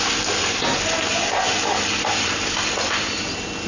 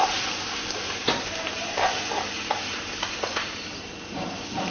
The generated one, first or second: second